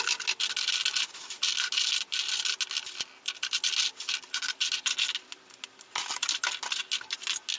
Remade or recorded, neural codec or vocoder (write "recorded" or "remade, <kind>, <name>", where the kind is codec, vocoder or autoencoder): recorded